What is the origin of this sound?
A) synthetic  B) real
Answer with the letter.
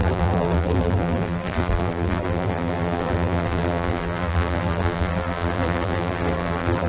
A